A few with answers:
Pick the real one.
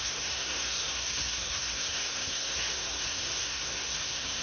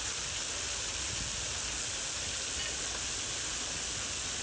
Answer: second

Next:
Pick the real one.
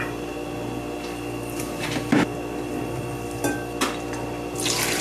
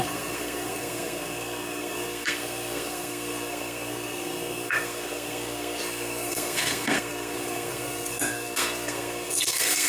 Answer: first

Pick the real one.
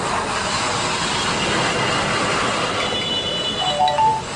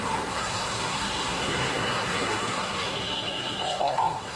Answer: first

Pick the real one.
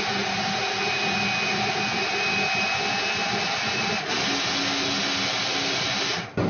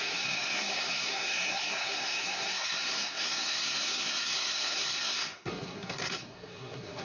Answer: first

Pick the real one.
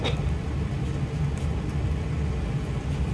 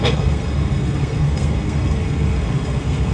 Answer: first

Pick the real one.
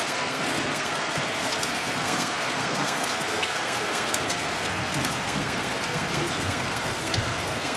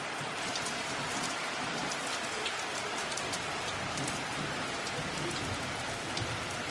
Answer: second